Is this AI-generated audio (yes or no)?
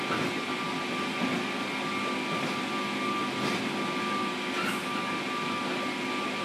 no